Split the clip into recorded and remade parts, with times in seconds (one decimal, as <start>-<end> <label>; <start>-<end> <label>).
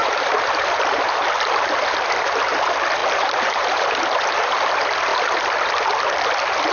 0.0-1.9 remade; 1.9-3.0 recorded; 3.0-3.9 remade; 3.9-6.7 recorded